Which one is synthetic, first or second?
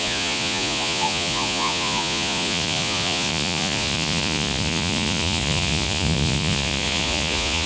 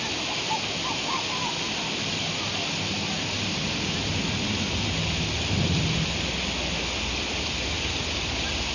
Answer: first